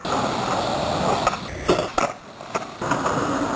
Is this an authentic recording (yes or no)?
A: yes